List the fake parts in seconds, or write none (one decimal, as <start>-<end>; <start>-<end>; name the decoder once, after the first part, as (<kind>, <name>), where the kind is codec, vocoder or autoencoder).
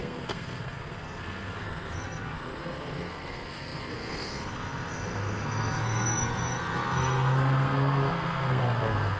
0.0-9.2 (codec, SNAC)